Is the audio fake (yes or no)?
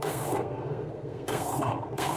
yes